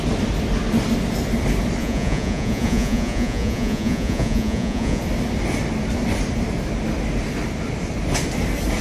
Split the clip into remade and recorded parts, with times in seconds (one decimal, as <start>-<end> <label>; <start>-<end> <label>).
0.0-1.8 recorded; 1.8-5.0 remade; 5.0-8.8 recorded